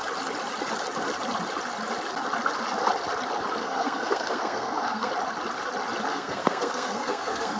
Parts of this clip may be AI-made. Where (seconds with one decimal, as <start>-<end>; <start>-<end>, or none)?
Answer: 3.6-5.1; 6.1-7.6